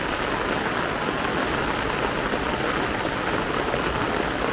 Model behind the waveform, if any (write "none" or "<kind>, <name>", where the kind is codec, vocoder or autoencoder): none